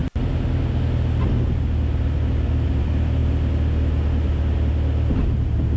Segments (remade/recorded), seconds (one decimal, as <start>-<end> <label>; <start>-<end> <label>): 0.0-5.8 recorded